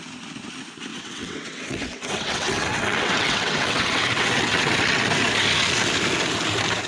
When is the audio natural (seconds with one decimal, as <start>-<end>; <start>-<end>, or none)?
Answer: 0.0-0.9; 5.0-6.9